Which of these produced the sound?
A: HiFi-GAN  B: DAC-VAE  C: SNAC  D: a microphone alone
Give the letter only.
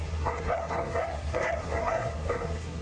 C